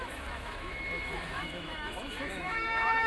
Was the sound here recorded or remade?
remade